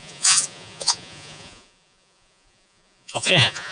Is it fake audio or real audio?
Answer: fake